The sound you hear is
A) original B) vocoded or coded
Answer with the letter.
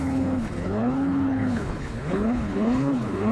B